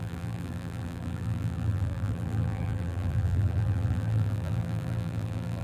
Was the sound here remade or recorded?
remade